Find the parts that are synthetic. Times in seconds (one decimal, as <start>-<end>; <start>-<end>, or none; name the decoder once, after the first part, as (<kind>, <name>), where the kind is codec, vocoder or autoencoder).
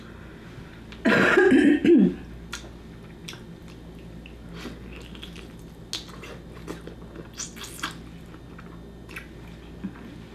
none